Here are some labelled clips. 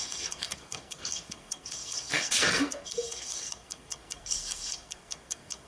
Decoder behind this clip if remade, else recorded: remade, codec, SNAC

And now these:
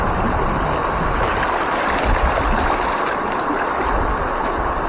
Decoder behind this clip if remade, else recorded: recorded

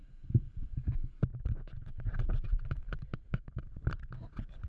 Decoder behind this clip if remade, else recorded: remade, vocoder, BigVGAN v2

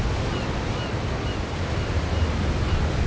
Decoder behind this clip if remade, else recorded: recorded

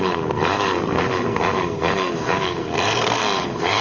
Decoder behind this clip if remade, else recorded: remade, codec, SNAC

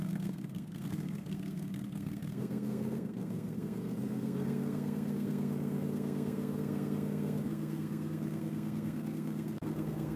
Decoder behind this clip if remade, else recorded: remade, codec, SNAC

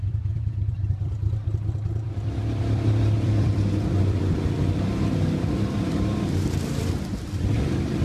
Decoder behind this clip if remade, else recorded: remade, vocoder, BigVGAN v2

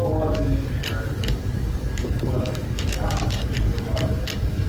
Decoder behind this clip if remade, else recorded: remade, codec, DAC